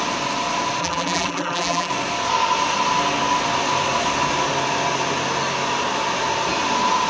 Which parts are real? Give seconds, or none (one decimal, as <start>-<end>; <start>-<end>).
0.0-0.8; 1.9-7.1